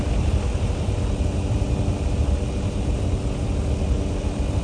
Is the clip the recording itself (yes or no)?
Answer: yes